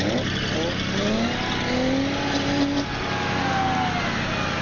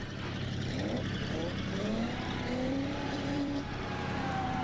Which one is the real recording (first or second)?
first